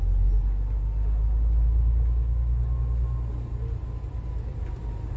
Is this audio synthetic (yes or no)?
no